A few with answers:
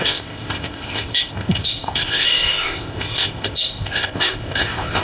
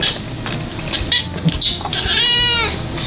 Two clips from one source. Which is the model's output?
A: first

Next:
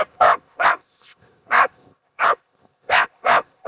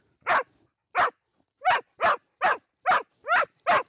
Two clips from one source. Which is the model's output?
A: first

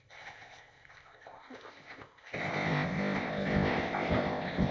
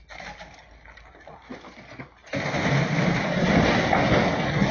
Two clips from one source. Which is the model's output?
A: first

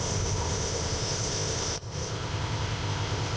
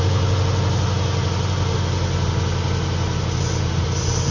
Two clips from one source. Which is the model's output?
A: first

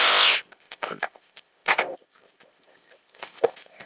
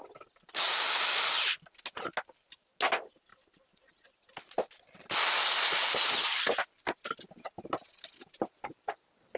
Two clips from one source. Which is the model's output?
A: first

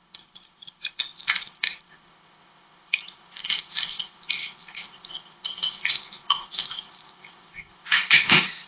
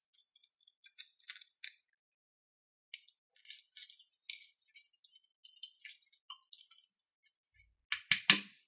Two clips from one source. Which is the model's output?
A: first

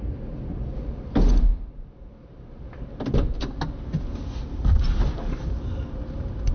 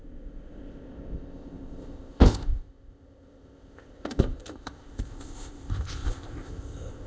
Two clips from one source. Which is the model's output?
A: second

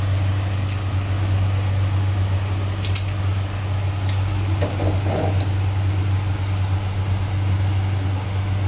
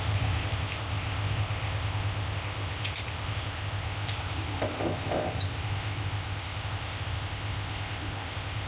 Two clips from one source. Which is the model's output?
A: second